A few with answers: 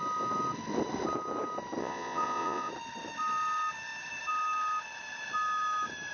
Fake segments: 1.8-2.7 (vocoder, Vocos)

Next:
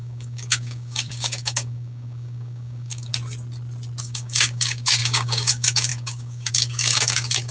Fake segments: 0.0-3.1 (codec, DAC); 4.0-7.5

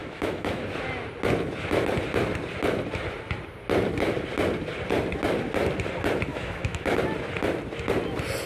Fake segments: 0.0-0.6 (autoencoder, DAC-VAE); 6.3-7.0

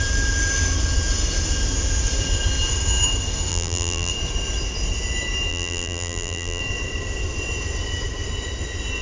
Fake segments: 3.5-4.1 (vocoder, BigVGAN v2); 5.5-6.6